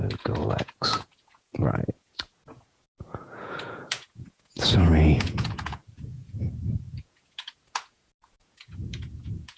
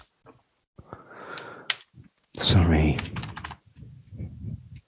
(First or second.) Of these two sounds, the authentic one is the second